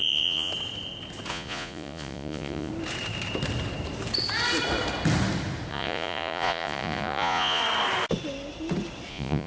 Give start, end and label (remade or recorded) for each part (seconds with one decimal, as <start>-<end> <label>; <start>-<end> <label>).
0.0-0.5 remade; 0.5-1.3 recorded; 1.3-2.7 remade; 2.7-5.7 recorded; 5.7-7.6 remade; 7.6-9.1 recorded; 9.1-9.5 remade